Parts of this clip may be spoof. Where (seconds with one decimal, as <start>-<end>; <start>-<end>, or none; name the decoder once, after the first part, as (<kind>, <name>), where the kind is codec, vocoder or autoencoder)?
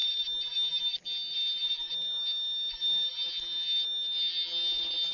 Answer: none